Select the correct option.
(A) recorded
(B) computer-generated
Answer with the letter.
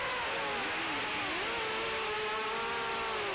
A